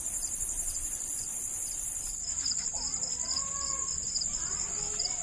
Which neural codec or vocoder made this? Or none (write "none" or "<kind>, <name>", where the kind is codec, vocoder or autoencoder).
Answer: none